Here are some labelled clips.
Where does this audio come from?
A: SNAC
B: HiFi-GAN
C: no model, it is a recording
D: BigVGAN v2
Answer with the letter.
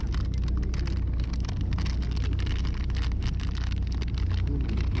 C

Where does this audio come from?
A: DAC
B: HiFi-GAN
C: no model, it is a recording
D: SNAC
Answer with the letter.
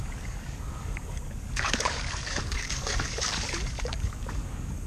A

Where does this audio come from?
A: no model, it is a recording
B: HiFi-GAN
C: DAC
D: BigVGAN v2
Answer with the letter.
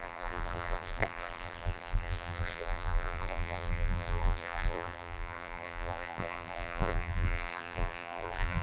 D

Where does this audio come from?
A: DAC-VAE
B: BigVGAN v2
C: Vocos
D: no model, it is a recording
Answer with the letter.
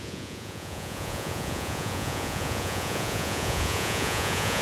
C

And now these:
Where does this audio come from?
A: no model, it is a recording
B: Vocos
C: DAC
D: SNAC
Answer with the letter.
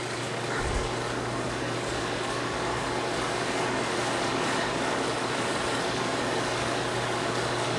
C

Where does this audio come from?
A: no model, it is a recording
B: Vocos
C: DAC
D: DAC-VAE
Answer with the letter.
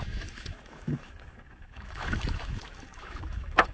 D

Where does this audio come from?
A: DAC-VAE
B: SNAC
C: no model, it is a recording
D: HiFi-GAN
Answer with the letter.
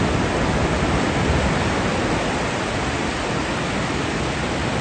C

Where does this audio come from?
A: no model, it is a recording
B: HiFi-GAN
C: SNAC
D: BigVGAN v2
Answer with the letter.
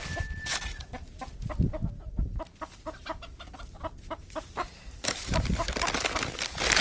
A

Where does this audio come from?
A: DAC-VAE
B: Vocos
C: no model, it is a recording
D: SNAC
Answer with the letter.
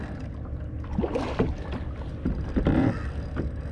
C